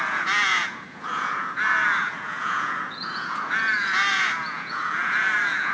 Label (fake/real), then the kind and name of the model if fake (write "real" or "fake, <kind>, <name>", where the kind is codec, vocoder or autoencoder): fake, vocoder, Vocos